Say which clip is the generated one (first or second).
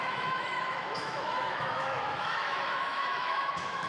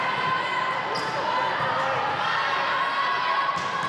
first